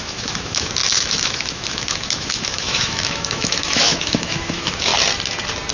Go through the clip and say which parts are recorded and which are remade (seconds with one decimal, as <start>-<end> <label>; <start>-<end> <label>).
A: 0.0-4.9 remade; 4.9-5.7 recorded